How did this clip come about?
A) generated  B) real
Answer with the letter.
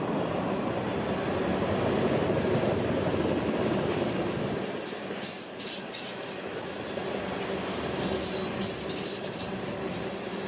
B